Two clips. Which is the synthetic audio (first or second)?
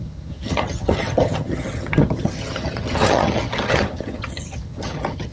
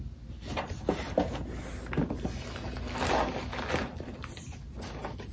first